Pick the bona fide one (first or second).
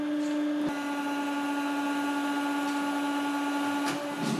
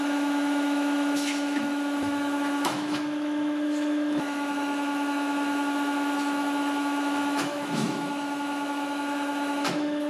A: first